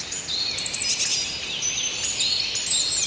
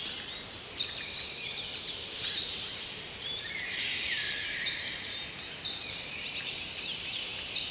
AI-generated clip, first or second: second